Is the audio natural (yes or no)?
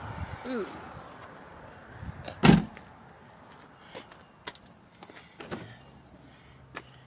yes